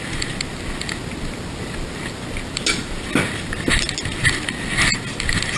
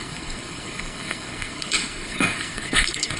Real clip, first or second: first